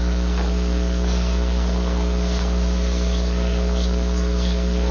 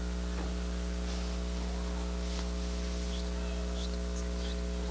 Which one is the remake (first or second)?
first